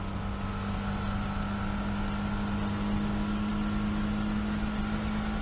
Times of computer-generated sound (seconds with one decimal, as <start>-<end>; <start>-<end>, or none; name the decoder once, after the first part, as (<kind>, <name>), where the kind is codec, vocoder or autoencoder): none